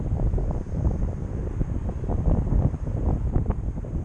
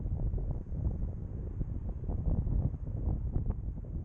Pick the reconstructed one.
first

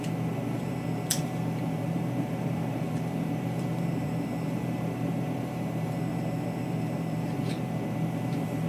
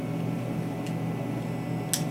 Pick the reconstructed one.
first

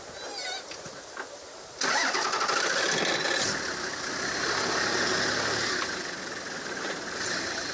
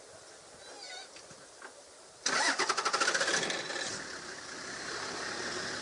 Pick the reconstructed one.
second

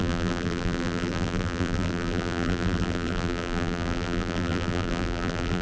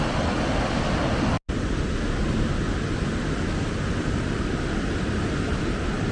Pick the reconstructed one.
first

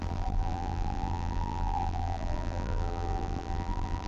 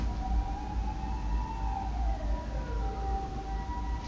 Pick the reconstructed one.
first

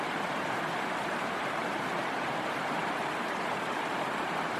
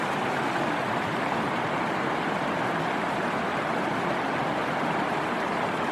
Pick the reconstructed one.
first